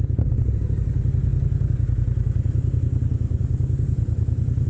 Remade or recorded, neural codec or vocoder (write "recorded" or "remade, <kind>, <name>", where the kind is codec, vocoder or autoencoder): recorded